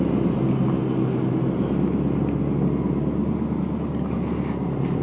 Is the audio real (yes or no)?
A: yes